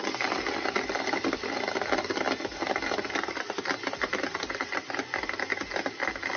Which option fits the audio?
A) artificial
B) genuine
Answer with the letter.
B